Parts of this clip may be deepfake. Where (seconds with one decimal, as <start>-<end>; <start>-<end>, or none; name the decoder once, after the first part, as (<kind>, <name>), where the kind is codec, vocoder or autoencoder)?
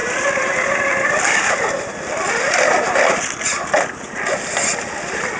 none